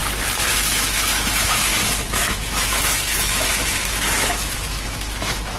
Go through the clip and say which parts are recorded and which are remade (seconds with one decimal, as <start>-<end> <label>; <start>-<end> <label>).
0.0-0.5 recorded; 0.5-5.6 remade

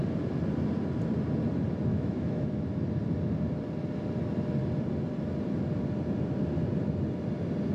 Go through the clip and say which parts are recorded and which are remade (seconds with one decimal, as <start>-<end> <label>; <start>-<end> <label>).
0.0-1.9 recorded; 1.9-2.5 remade; 2.5-7.7 recorded

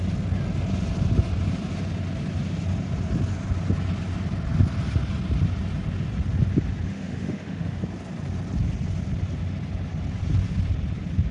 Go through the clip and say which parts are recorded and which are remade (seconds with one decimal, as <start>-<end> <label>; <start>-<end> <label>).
0.0-6.9 recorded; 6.9-7.8 remade; 7.8-11.3 recorded

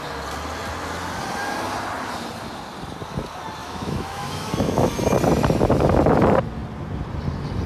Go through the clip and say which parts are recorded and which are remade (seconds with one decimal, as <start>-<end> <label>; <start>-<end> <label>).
0.0-3.6 recorded; 3.6-4.9 remade; 4.9-7.7 recorded

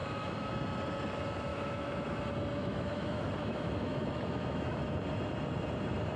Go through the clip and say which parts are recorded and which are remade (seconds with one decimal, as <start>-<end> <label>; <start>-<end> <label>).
0.0-0.5 remade; 0.5-1.5 recorded; 1.5-2.2 remade; 2.2-2.6 recorded; 2.6-4.8 remade; 4.8-6.2 recorded

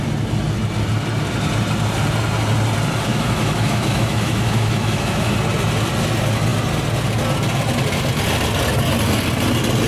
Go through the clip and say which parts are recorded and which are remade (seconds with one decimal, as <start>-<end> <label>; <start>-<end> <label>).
0.0-3.1 recorded; 3.1-5.3 remade; 5.3-9.9 recorded